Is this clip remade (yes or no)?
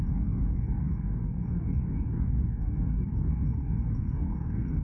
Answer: yes